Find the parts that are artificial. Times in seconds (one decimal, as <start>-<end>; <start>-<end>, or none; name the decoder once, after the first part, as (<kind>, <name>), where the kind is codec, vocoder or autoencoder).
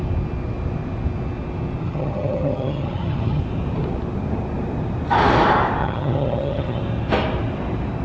1.8-3.4 (vocoder, HiFi-GAN); 5.8-6.8